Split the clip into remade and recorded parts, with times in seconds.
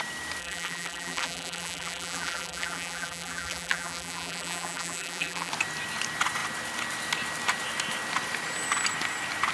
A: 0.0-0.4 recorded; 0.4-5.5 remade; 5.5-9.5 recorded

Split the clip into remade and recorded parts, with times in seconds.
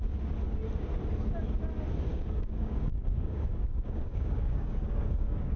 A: 0.0-2.1 recorded; 2.1-5.6 remade